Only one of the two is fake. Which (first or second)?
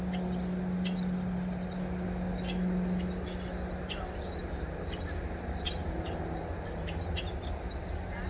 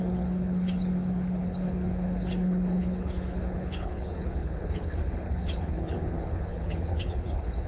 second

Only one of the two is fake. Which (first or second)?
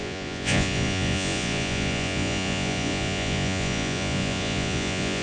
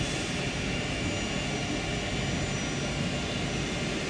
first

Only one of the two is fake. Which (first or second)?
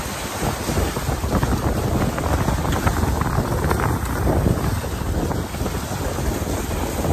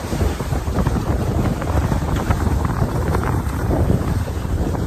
second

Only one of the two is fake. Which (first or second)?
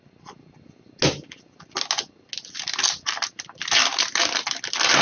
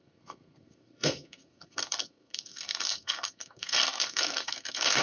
second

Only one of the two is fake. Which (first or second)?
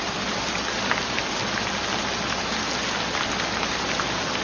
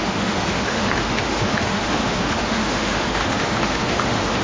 second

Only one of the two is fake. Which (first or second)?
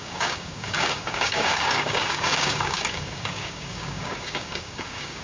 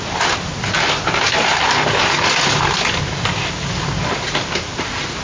first